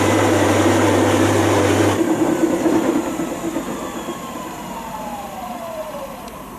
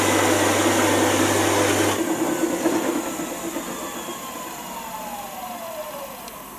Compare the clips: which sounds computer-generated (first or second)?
first